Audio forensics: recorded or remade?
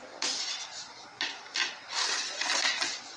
recorded